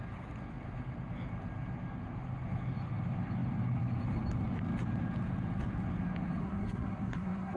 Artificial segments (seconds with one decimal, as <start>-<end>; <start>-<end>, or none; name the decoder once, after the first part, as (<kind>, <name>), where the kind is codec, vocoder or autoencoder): 6.4-7.6 (codec, SNAC)